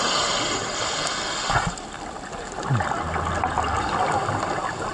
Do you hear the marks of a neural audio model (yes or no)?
no